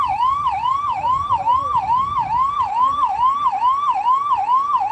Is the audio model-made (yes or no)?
no